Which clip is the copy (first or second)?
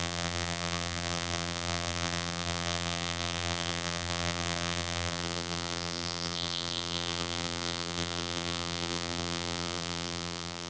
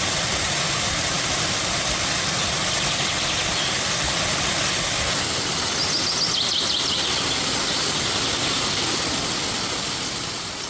first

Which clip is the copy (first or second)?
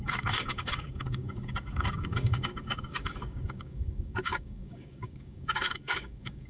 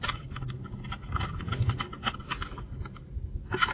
first